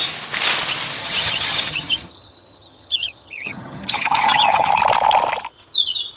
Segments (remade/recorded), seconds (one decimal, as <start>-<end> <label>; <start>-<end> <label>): 0.0-1.0 recorded; 1.0-4.7 remade; 4.7-6.2 recorded